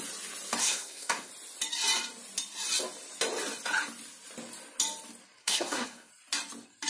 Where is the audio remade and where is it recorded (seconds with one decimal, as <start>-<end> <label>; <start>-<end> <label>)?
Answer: 0.0-0.6 recorded; 0.6-1.3 remade; 1.3-5.4 recorded; 5.4-6.1 remade; 6.1-6.9 recorded